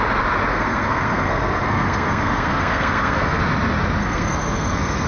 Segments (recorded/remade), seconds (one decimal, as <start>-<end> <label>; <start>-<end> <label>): 0.0-0.5 recorded; 0.5-3.4 remade; 3.4-4.0 recorded; 4.0-5.1 remade

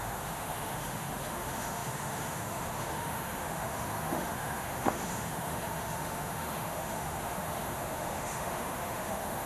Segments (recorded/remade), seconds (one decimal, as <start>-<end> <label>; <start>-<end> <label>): 0.0-9.5 remade

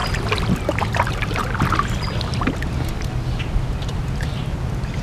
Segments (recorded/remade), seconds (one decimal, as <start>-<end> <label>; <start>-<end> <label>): 0.0-5.0 recorded

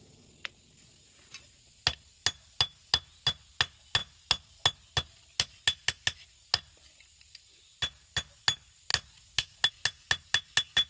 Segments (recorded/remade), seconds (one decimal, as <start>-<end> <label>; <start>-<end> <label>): 0.0-10.9 recorded

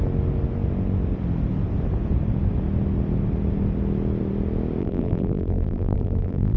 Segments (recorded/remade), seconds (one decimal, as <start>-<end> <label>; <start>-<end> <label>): 0.0-4.8 recorded; 4.8-6.6 remade

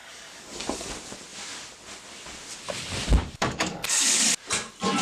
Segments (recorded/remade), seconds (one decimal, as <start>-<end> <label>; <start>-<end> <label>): 0.0-0.9 remade; 0.9-3.2 recorded; 3.2-4.3 remade; 4.3-5.0 recorded

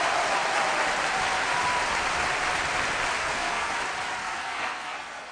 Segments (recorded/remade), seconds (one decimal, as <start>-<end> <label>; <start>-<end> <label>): 0.0-3.2 recorded; 3.2-3.7 remade; 3.7-4.2 recorded; 4.2-5.3 remade